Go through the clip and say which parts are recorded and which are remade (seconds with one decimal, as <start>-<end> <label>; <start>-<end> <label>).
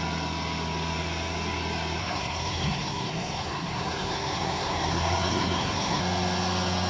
0.0-2.0 recorded; 2.0-6.0 remade; 6.0-6.9 recorded